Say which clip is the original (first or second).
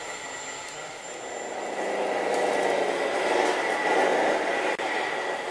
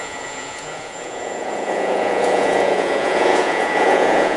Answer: first